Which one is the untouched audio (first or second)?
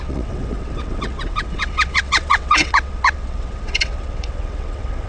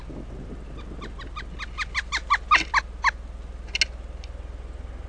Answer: second